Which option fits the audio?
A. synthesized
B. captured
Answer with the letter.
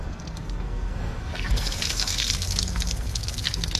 A